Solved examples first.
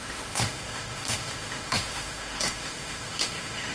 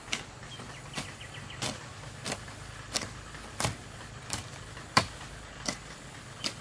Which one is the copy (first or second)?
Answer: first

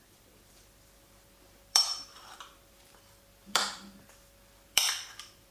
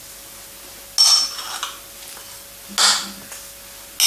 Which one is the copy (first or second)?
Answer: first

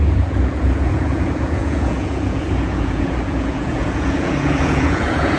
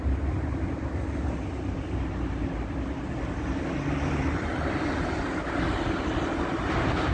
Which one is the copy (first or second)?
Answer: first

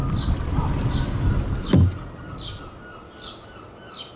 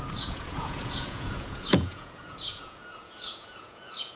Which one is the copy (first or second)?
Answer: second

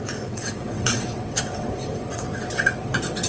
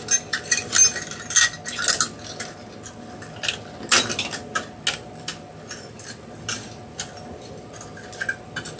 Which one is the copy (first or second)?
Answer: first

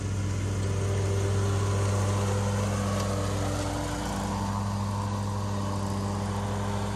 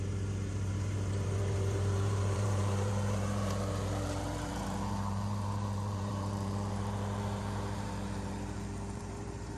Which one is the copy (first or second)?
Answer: second